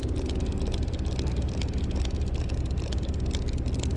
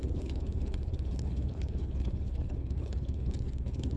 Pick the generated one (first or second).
second